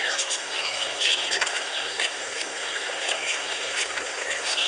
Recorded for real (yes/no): no